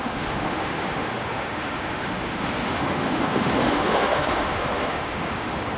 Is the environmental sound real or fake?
fake